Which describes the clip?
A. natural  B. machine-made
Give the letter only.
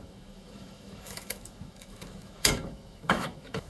B